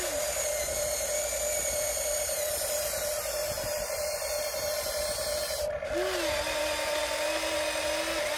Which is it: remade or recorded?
recorded